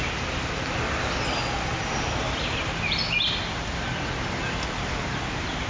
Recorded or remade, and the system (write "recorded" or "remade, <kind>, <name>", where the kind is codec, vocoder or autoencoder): recorded